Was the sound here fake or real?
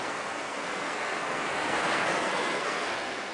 fake